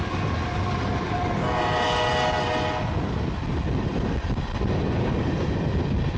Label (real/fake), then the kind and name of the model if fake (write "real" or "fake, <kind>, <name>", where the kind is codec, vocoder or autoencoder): real